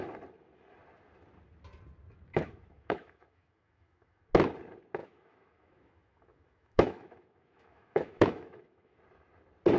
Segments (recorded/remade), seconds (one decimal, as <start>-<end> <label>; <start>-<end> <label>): 0.0-2.3 recorded; 2.3-4.2 remade; 4.2-5.0 recorded; 5.0-9.0 remade; 9.0-9.8 recorded